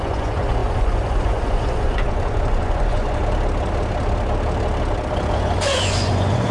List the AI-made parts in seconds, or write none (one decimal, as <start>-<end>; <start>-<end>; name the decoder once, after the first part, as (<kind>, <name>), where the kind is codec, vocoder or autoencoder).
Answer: 0.0-3.2 (vocoder, Vocos); 5.3-6.5